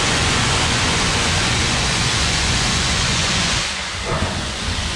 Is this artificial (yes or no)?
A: yes